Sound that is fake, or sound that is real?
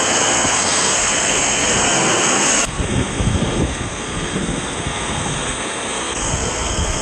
fake